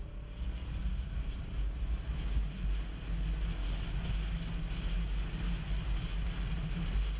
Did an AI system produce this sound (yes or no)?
no